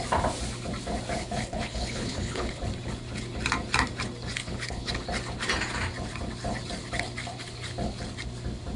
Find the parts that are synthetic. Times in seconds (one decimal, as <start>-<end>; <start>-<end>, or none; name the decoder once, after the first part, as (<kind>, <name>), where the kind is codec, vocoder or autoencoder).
1.2-2.6 (codec, HILCodec); 4.4-4.9